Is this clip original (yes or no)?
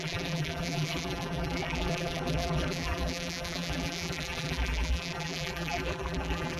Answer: no